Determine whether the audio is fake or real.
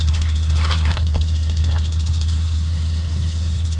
fake